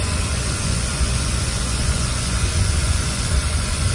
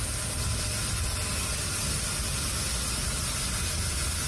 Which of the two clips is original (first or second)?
second